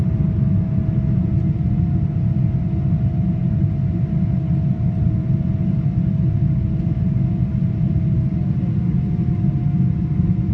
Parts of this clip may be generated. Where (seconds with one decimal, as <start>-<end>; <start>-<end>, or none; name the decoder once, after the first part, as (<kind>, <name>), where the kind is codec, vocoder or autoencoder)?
none